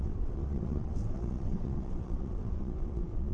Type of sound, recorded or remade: remade